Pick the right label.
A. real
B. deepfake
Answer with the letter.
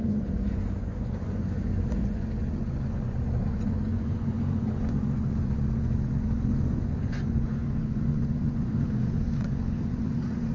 B